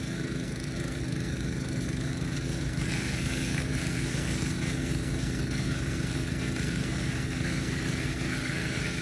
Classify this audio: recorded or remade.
remade